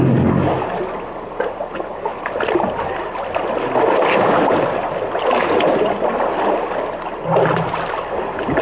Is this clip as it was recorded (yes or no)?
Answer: yes